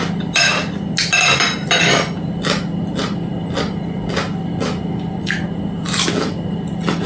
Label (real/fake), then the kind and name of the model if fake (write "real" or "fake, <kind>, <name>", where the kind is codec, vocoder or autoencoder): real